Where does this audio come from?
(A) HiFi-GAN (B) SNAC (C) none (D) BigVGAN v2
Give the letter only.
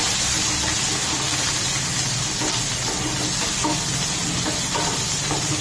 C